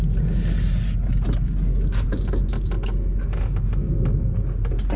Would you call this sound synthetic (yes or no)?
no